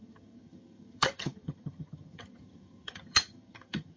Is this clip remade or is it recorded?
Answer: remade